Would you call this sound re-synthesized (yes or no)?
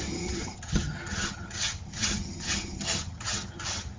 yes